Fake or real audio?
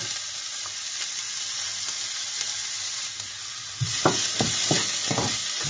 real